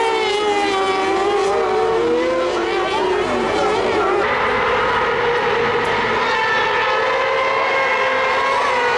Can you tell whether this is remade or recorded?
recorded